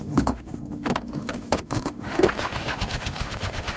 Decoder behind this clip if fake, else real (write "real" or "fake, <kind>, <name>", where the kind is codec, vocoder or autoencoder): fake, autoencoder, DAC-VAE